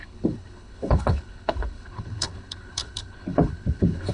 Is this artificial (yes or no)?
yes